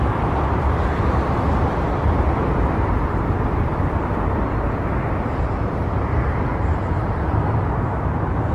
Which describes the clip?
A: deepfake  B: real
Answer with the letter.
A